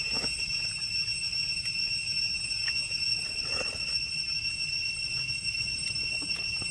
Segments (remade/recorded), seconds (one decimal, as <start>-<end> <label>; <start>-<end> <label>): 0.0-3.1 recorded; 3.1-4.1 remade; 4.1-6.7 recorded